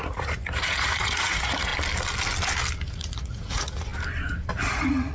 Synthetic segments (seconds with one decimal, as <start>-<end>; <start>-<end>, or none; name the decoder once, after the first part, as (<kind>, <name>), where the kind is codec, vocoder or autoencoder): 0.0-1.7 (vocoder, Vocos); 2.9-3.9; 4.5-5.1